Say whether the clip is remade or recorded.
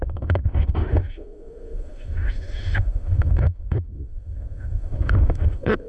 remade